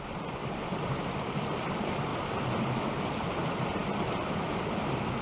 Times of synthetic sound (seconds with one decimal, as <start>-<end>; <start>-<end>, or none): 0.0-2.1; 3.0-3.8; 4.6-5.2